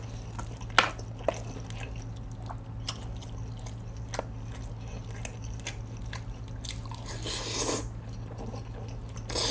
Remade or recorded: recorded